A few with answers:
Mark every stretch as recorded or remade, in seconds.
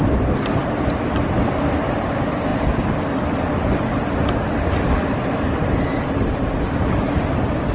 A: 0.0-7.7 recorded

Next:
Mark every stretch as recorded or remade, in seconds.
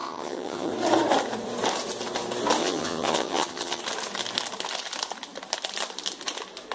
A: 0.0-0.7 remade; 0.7-2.6 recorded; 2.6-3.8 remade; 3.8-6.7 recorded